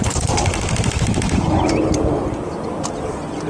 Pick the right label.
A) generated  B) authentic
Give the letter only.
A